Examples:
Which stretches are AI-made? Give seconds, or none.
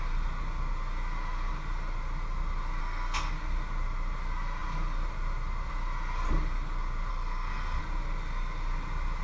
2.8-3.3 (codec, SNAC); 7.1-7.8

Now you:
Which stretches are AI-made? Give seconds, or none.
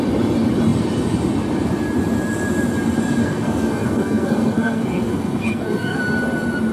3.2-6.0 (codec, SNAC)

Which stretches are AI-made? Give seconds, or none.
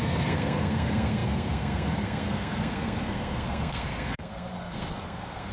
0.0-5.5 (codec, SNAC)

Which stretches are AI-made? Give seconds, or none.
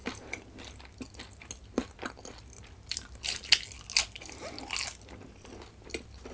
none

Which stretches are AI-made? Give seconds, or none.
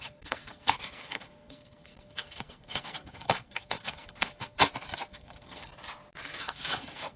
0.0-4.6 (codec, SNAC); 5.1-5.7; 6.4-7.2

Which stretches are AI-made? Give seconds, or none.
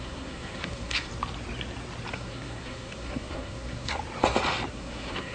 0.0-1.1 (codec, SNAC); 2.1-4.0; 4.7-5.3